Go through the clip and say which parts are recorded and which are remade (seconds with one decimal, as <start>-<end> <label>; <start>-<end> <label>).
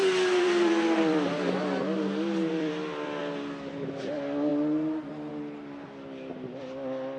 0.0-1.6 remade; 1.6-2.5 recorded; 2.5-3.2 remade; 3.2-7.2 recorded